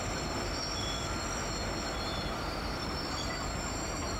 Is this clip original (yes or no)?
yes